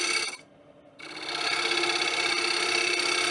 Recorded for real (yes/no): yes